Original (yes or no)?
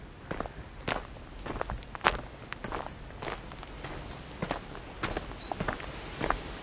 yes